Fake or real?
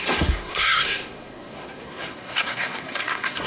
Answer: fake